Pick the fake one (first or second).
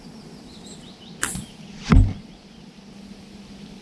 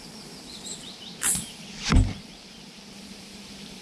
second